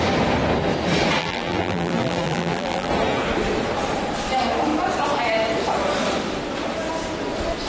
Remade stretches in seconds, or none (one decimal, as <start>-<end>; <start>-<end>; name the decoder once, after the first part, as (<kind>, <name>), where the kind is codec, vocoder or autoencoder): 1.2-2.9 (vocoder, BigVGAN v2)